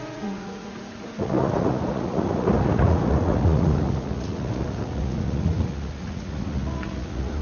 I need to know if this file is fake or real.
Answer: fake